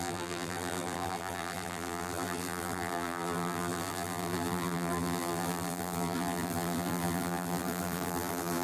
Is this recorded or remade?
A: remade